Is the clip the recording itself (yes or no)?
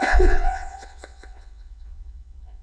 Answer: no